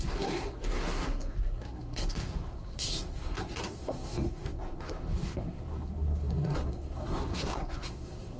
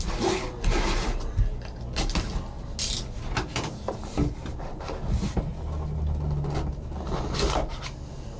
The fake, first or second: first